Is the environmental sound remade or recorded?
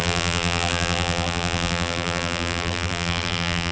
remade